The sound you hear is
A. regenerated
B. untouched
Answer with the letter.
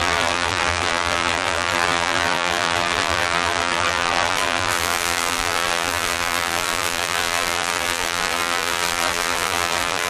A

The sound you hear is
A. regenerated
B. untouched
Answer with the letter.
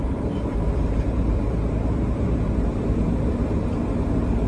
A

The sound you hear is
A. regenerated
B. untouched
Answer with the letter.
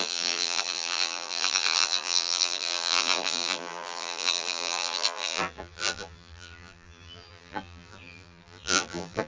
A